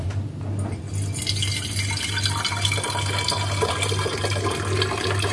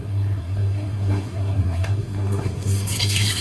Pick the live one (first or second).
first